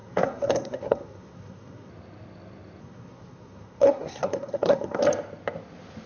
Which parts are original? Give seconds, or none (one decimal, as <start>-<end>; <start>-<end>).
1.9-2.8; 5.0-6.1